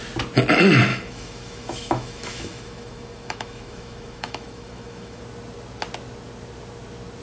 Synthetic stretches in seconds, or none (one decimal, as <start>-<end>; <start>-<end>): 0.9-5.2